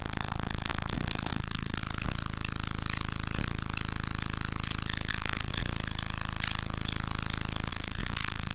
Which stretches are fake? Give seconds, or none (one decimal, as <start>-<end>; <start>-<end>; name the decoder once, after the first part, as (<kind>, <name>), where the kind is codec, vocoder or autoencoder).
0.0-1.8 (codec, SNAC); 5.1-5.5; 7.7-8.5